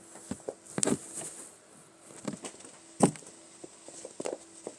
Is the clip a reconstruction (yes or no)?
no